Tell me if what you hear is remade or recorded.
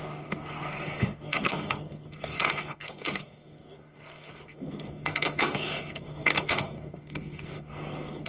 remade